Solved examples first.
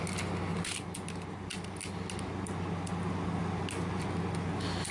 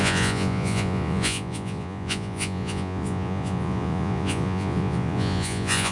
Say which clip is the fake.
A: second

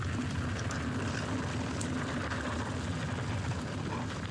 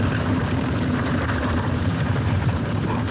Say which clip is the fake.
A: second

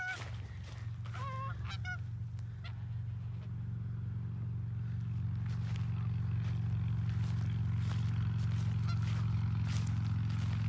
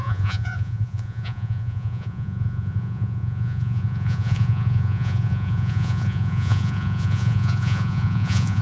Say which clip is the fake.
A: second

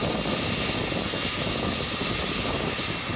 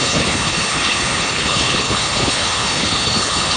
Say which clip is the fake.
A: second